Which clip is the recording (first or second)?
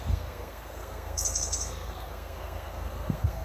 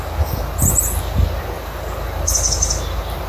second